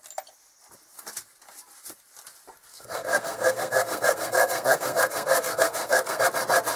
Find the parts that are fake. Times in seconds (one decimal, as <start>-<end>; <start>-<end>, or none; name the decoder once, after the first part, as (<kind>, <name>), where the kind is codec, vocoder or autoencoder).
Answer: 2.7-6.2 (codec, SNAC)